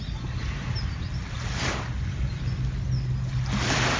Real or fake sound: real